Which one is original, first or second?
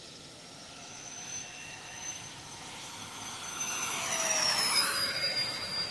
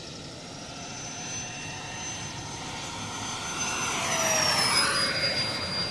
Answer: second